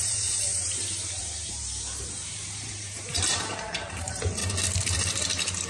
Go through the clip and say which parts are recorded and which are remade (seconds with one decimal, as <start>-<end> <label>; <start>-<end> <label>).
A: 0.0-4.4 remade; 4.4-5.7 recorded